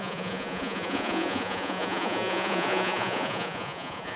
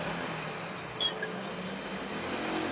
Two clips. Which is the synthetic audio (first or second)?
first